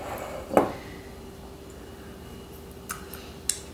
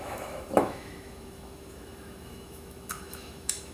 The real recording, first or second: first